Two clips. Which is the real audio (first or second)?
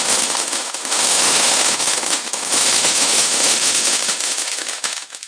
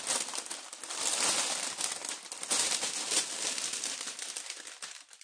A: second